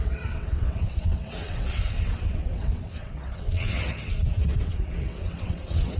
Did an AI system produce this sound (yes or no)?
yes